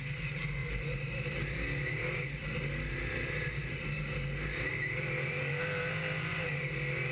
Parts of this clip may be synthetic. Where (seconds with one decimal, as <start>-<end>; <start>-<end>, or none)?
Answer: 0.6-2.2; 4.7-5.4